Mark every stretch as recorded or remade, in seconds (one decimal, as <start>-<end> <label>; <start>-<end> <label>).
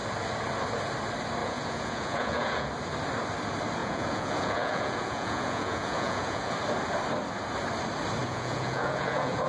0.0-1.4 recorded; 1.4-2.7 remade; 2.7-3.8 recorded; 3.8-6.5 remade; 6.5-8.2 recorded; 8.2-9.5 remade